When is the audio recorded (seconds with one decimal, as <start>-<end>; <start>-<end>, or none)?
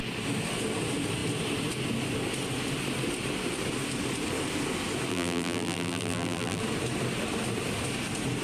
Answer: 0.0-5.1; 6.6-8.4